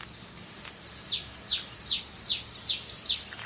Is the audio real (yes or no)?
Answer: yes